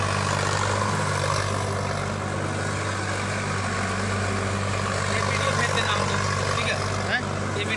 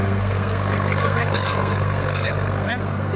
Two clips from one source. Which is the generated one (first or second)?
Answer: second